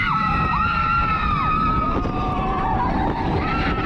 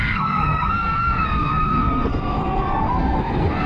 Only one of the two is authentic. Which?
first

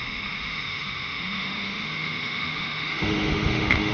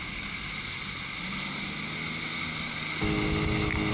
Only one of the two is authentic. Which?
second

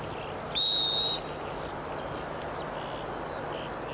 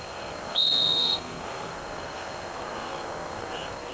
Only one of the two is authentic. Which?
first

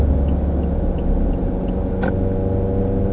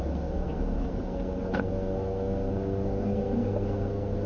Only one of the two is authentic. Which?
first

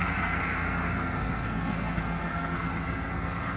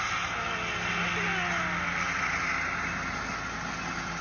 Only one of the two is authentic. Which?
second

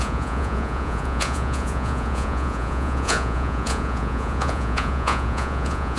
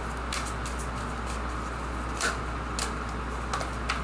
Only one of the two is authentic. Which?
second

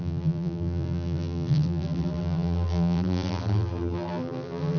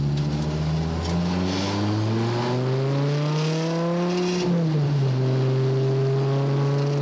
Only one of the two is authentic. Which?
second